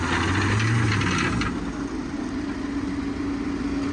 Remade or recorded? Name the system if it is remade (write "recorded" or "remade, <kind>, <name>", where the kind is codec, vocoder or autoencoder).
recorded